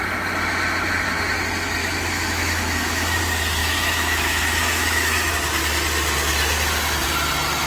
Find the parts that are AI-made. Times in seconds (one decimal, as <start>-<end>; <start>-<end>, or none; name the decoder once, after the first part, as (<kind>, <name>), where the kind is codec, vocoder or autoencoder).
1.8-3.2 (autoencoder, DAC-VAE); 3.6-5.3